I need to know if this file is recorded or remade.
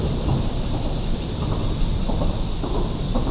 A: recorded